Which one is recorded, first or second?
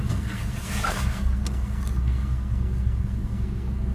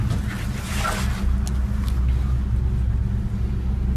second